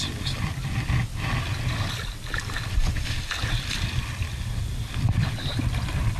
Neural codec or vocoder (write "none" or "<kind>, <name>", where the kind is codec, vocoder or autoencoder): none